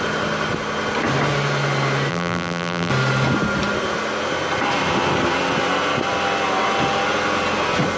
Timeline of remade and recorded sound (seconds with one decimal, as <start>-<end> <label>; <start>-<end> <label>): 0.0-2.1 recorded; 2.1-2.9 remade; 2.9-8.0 recorded